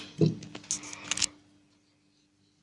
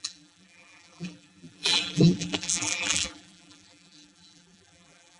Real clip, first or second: first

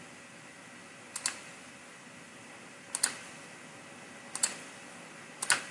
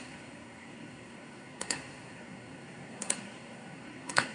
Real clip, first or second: first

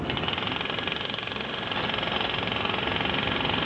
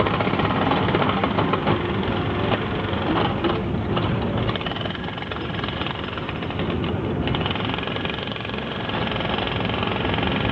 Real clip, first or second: first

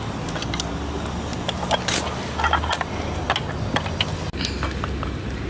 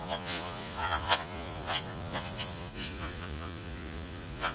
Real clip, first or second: first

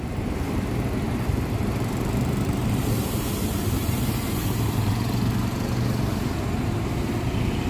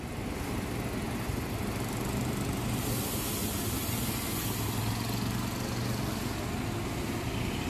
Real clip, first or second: second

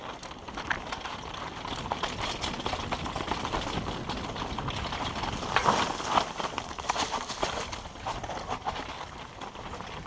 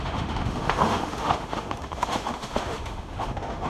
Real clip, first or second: first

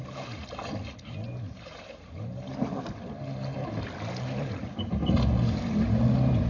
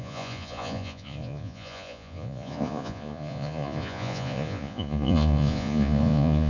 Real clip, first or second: first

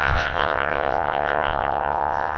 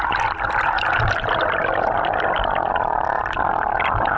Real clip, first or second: second